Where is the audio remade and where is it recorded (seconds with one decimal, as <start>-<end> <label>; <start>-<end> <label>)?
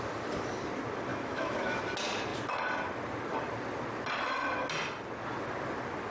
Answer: 0.0-1.1 recorded; 1.1-1.8 remade; 1.8-6.1 recorded